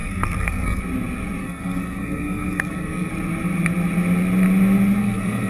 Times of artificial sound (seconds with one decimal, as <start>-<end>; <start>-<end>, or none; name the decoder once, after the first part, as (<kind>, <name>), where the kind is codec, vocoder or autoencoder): 0.0-0.8 (codec, SNAC); 1.4-3.1; 5.0-5.5